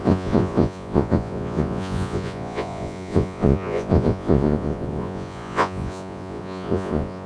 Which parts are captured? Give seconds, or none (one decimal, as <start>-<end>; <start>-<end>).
none